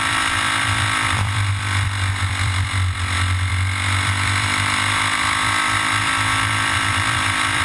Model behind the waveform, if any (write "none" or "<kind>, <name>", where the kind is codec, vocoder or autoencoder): vocoder, BigVGAN v2